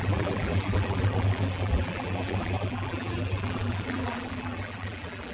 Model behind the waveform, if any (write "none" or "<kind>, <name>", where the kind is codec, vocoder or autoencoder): vocoder, BigVGAN v2